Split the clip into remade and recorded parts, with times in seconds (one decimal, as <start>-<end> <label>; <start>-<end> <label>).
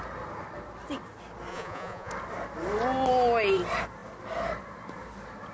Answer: 0.0-1.5 recorded; 1.5-2.1 remade; 2.1-5.5 recorded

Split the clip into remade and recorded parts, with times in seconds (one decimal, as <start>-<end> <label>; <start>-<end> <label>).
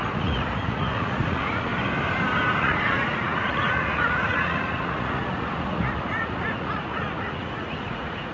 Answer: 0.0-1.7 remade; 1.7-2.6 recorded; 2.6-8.3 remade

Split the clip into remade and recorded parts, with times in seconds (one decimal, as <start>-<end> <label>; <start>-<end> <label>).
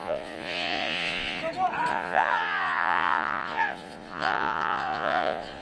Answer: 0.0-1.4 remade; 1.4-1.9 recorded; 1.9-5.6 remade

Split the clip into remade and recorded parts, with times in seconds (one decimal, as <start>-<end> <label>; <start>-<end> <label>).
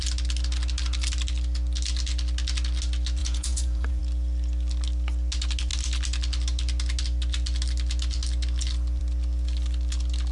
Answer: 0.0-3.2 recorded; 3.2-4.0 remade; 4.0-10.3 recorded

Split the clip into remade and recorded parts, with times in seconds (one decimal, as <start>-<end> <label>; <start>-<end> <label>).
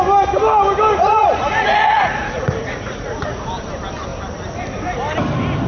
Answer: 0.0-1.0 recorded; 1.0-3.5 remade; 3.5-5.7 recorded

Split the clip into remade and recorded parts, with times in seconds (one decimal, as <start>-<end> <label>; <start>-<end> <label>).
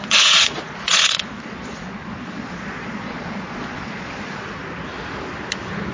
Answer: 0.0-4.6 remade; 4.6-5.9 recorded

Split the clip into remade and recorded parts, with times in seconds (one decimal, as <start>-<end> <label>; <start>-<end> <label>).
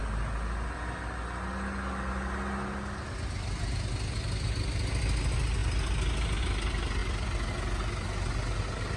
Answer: 0.0-9.0 recorded